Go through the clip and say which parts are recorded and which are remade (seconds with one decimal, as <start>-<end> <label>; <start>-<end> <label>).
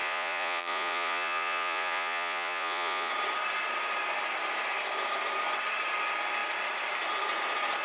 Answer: 0.0-3.1 remade; 3.1-7.8 recorded